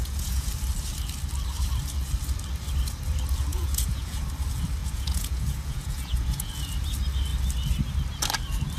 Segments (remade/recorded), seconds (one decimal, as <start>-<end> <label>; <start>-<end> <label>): 0.0-0.5 remade; 0.5-3.5 recorded; 3.5-4.2 remade; 4.2-4.8 recorded; 4.8-6.5 remade; 6.5-8.8 recorded